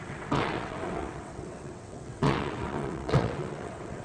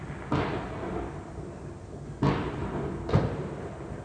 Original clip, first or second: second